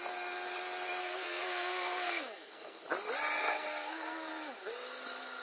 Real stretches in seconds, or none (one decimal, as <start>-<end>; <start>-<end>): 0.0-1.0; 2.8-3.4; 4.3-5.4

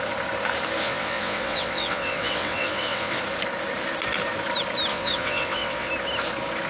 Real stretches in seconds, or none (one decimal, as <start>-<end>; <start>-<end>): 0.0-0.8; 3.2-4.9; 5.9-6.7

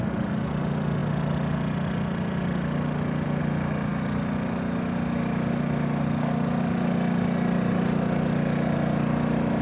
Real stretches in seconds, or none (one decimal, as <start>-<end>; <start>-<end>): 0.0-9.6

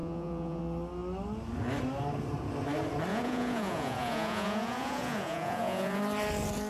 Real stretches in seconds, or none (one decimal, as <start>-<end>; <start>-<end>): 0.6-3.1; 6.0-6.7

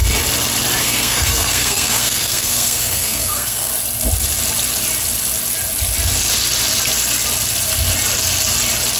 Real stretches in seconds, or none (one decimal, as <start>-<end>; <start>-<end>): 0.0-0.8; 3.7-9.0

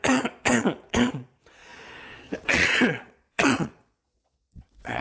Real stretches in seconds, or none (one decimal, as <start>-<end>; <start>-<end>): none

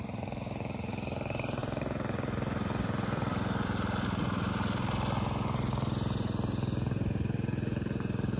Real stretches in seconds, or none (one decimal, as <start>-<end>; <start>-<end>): 0.0-1.6; 4.5-8.4

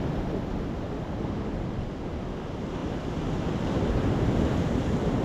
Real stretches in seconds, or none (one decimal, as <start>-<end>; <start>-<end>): 0.0-5.2